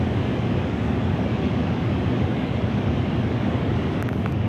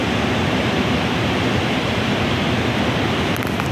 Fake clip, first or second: first